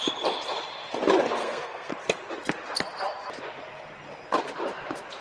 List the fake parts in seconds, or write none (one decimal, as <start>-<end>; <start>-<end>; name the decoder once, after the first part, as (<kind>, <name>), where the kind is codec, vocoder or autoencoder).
1.4-1.9 (codec, SNAC)